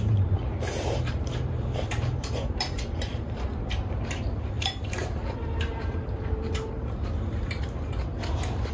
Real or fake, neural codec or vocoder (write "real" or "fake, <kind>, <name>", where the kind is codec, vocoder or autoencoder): fake, vocoder, BigVGAN v2